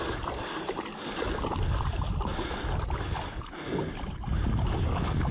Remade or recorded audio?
recorded